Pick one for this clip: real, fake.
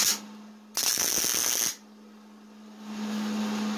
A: real